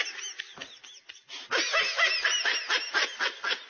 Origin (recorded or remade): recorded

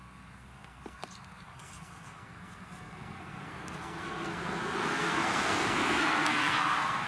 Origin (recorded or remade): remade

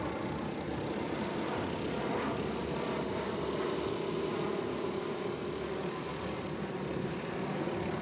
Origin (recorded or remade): recorded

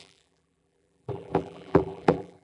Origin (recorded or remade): remade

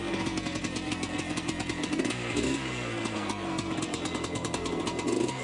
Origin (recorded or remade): remade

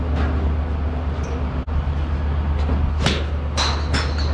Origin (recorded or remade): recorded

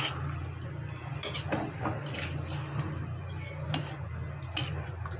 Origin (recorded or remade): recorded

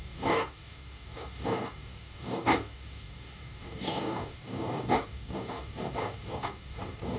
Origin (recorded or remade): remade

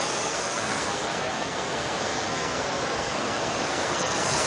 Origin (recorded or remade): remade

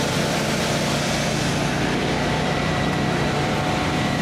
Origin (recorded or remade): remade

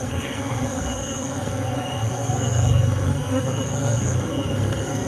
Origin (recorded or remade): remade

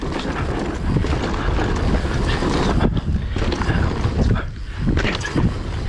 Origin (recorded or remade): recorded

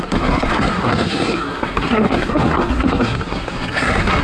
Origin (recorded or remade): remade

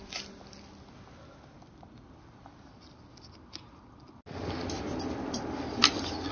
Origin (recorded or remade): recorded